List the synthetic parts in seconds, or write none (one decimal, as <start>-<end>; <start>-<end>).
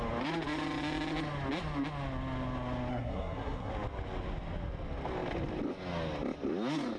2.9-3.7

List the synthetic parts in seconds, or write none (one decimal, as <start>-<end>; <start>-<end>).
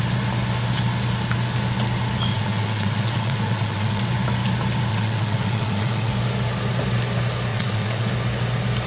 2.3-4.0; 4.9-6.1; 7.5-8.1